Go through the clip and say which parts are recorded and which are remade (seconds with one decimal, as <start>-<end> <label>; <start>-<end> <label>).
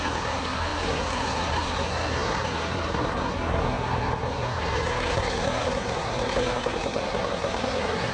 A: 0.0-8.1 remade